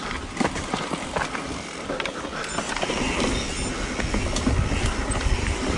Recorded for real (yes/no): yes